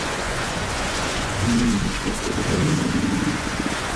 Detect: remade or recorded remade